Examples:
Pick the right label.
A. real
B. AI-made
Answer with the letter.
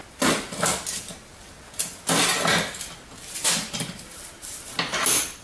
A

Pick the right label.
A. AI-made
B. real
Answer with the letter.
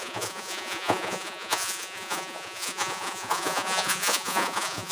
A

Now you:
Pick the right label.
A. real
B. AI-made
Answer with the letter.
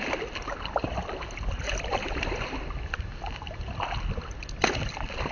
A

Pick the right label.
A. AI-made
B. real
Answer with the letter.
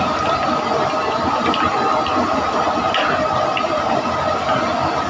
B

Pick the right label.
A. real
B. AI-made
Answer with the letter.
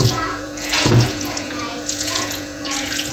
B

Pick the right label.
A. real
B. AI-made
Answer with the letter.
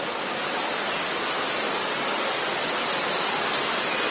A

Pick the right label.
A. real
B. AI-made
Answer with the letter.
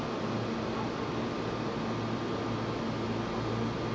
A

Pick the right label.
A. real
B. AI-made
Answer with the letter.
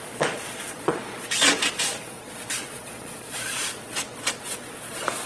B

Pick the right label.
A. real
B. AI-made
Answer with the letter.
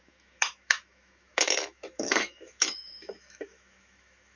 B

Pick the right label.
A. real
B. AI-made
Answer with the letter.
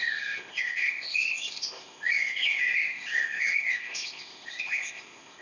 B